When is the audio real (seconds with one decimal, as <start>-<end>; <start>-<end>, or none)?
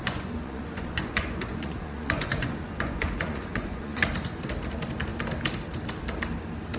4.1-6.8